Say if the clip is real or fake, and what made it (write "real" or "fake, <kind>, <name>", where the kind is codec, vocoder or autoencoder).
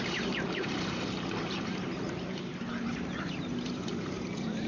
fake, vocoder, BigVGAN v2